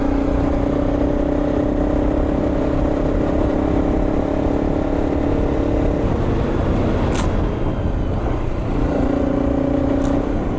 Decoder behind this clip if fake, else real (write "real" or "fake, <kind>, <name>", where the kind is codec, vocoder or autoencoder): real